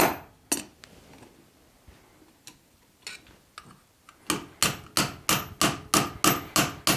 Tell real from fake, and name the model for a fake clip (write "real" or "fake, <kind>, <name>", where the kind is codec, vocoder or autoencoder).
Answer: real